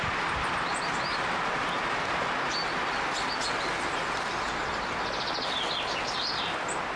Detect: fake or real real